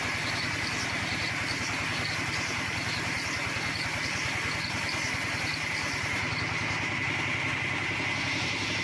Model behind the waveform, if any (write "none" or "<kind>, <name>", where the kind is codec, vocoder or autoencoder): none